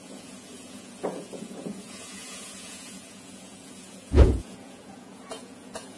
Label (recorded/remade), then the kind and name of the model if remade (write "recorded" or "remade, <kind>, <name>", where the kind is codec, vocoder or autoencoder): remade, vocoder, Vocos